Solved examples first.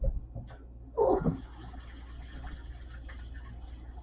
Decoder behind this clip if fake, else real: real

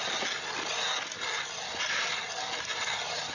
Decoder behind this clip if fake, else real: real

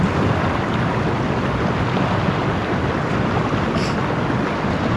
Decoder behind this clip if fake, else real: real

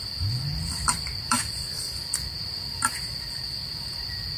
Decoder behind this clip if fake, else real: fake, vocoder, BigVGAN v2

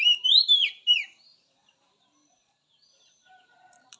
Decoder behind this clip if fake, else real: fake, vocoder, BigVGAN v2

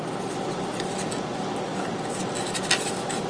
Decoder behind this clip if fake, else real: real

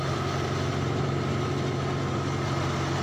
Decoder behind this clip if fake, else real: real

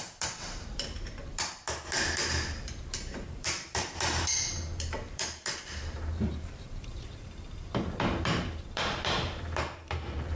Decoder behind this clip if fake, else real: fake, vocoder, BigVGAN v2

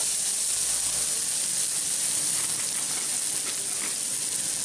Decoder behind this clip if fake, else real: real